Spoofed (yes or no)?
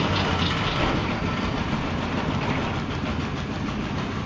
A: no